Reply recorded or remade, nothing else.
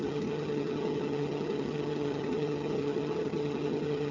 remade